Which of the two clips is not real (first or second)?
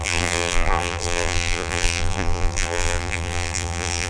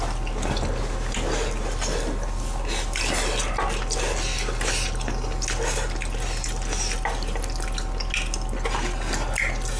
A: first